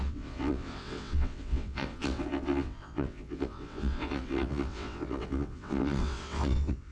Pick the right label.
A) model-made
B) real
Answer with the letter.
A